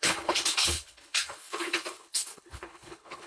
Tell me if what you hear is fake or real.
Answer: fake